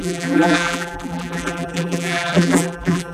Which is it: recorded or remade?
remade